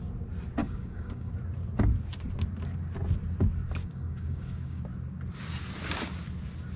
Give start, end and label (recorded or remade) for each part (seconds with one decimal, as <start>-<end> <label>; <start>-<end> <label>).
0.0-0.6 recorded; 0.6-1.3 remade; 1.3-3.8 recorded; 3.8-4.8 remade; 4.8-6.8 recorded